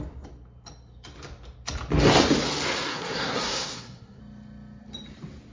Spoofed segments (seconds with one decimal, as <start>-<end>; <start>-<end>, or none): 2.9-4.2